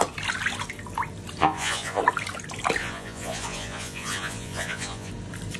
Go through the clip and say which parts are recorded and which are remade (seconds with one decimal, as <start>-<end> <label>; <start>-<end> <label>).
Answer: 0.0-1.4 recorded; 1.4-2.0 remade; 2.0-2.8 recorded; 2.8-5.1 remade; 5.1-5.6 recorded